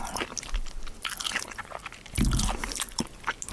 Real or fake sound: real